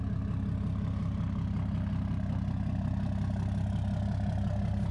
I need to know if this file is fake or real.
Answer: real